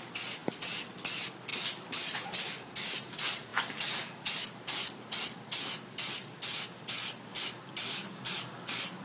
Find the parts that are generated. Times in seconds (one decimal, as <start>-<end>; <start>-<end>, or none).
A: none